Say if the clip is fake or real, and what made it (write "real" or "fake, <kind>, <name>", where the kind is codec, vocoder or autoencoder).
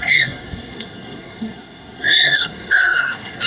fake, codec, SNAC